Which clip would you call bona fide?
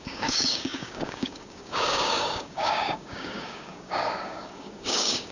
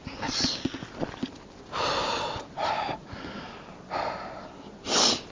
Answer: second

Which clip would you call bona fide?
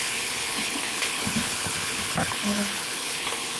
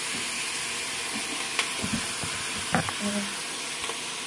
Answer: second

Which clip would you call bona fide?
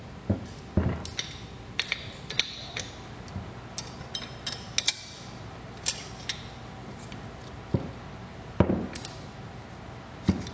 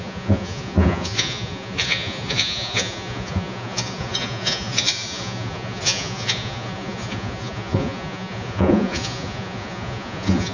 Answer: first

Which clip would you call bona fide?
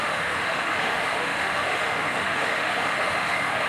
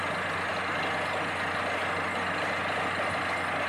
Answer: second